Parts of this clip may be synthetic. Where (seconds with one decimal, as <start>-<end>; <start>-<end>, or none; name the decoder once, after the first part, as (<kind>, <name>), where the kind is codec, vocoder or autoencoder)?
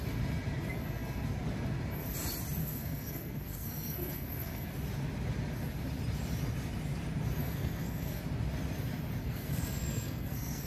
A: 2.6-4.7 (codec, SNAC); 7.4-8.2; 9.2-10.7